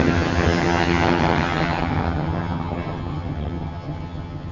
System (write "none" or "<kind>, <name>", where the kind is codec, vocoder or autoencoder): vocoder, HiFi-GAN